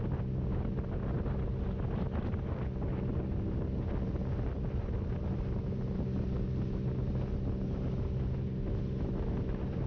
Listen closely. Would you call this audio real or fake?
real